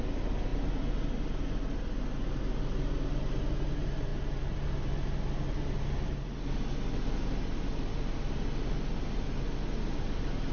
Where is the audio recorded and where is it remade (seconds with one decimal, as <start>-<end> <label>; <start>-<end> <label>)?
0.0-10.5 recorded